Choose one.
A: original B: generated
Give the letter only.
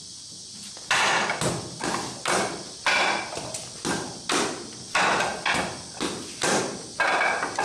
A